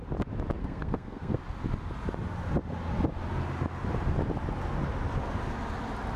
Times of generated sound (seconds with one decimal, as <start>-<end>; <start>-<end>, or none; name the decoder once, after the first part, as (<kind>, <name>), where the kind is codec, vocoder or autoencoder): 0.6-1.4 (codec, SNAC)